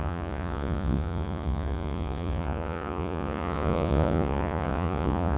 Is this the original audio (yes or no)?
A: no